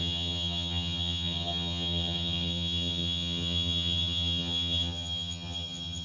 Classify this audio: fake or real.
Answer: fake